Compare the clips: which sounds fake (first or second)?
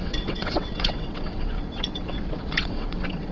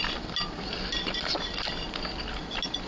first